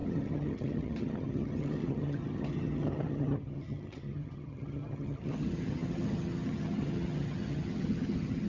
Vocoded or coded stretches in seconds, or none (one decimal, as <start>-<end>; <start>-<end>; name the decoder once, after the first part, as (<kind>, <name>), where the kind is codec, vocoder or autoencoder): 0.0-8.5 (vocoder, HiFi-GAN)